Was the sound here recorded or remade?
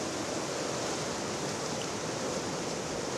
recorded